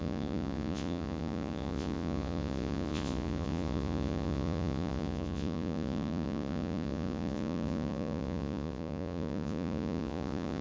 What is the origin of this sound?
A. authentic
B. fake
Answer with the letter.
B